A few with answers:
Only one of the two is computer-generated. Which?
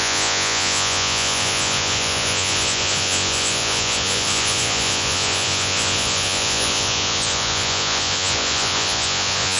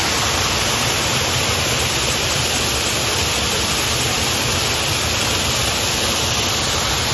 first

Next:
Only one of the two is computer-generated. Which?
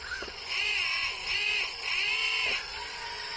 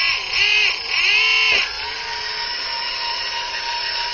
first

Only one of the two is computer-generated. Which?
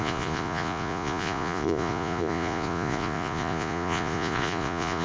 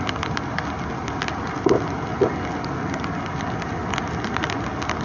first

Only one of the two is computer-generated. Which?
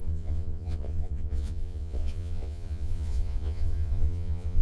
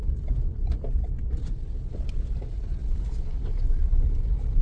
first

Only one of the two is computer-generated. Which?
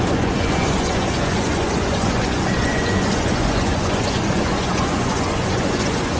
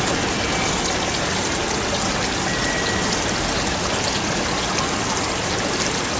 first